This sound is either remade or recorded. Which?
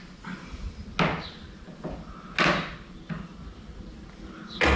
recorded